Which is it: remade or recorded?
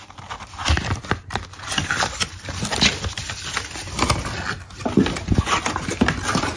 recorded